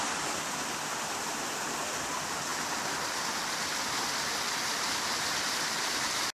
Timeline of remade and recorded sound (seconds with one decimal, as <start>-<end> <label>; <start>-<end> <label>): 0.0-6.4 recorded